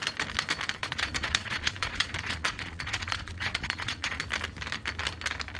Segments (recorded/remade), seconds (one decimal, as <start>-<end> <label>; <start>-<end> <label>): 0.0-0.8 recorded; 0.8-4.2 remade; 4.2-5.6 recorded